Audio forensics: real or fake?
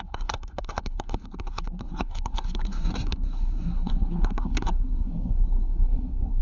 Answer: fake